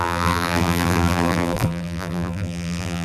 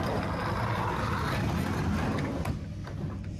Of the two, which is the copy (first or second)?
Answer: first